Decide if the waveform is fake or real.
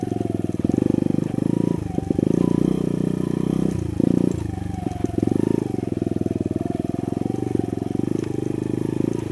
real